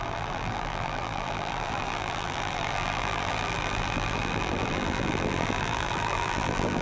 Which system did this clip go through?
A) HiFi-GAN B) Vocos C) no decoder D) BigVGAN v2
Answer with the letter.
D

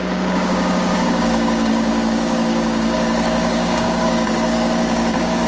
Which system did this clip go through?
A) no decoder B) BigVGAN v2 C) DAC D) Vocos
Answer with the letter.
C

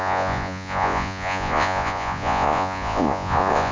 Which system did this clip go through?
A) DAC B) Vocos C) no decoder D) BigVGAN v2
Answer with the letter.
B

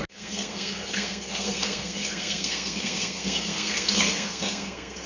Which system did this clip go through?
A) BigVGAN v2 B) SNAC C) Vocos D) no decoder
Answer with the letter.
B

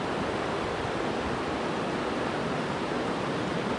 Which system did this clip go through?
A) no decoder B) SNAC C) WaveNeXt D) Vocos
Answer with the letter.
A